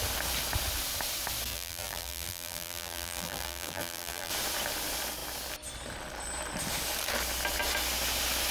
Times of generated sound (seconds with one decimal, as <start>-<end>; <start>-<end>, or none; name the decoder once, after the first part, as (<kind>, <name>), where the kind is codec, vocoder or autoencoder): 1.5-4.3 (vocoder, BigVGAN v2)